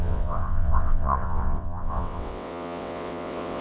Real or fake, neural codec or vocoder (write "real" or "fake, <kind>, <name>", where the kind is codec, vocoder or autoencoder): fake, vocoder, WaveNeXt